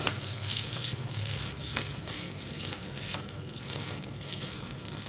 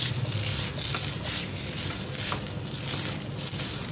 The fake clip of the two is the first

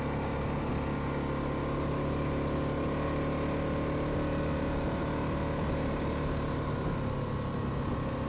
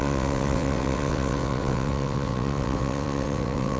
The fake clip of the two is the second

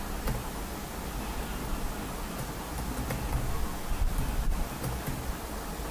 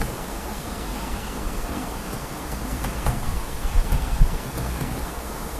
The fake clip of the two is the second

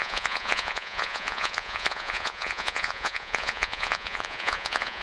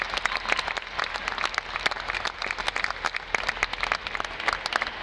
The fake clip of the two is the first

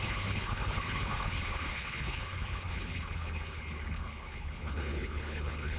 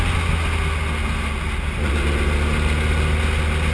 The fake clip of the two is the first